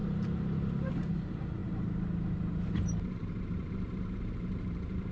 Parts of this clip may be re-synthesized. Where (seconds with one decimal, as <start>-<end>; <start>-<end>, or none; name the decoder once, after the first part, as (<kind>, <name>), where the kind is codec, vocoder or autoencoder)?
0.0-5.1 (vocoder, BigVGAN v2)